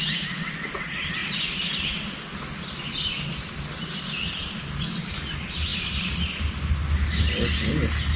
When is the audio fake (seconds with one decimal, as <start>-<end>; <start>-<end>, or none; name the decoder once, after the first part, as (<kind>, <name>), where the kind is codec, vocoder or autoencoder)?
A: none